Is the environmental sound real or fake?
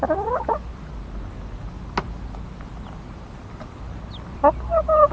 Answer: real